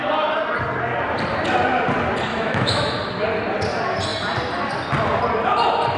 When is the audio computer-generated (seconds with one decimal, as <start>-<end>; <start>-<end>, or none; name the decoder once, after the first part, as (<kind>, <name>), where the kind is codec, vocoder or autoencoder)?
2.3-2.9 (autoencoder, DAC-VAE)